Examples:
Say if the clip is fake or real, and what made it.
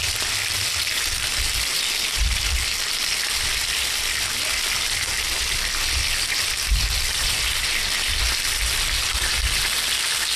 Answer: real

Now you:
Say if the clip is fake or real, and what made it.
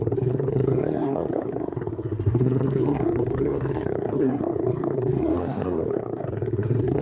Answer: fake, codec, SNAC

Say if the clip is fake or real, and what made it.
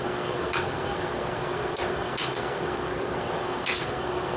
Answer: fake, codec, SNAC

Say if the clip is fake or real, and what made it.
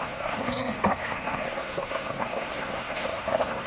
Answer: fake, codec, SNAC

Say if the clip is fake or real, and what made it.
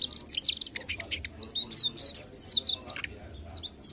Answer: real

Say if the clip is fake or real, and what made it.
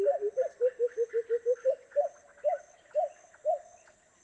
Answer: real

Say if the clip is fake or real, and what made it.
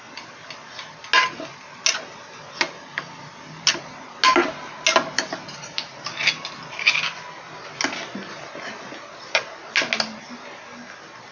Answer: real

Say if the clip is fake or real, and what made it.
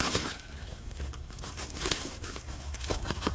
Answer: fake, codec, SNAC